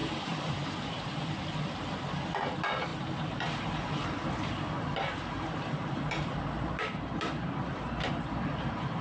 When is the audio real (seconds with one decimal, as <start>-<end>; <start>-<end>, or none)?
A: 1.4-2.9; 7.9-9.0